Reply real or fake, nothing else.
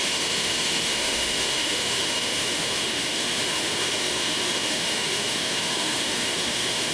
fake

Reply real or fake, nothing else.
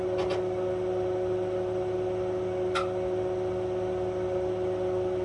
real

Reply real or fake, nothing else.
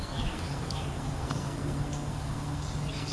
fake